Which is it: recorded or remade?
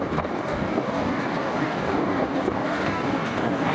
remade